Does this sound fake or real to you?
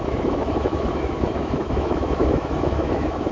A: fake